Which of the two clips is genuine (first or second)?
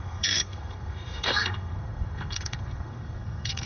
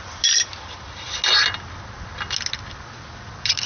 second